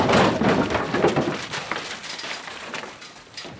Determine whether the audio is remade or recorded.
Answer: recorded